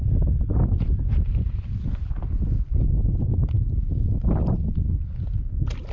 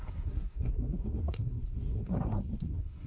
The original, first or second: first